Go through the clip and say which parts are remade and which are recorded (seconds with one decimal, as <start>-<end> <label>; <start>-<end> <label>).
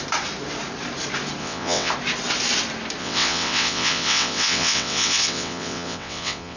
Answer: 0.0-1.4 recorded; 1.4-1.9 remade; 1.9-3.0 recorded; 3.0-6.6 remade